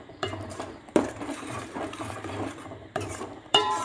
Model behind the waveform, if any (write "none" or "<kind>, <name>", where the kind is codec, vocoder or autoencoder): vocoder, BigVGAN v2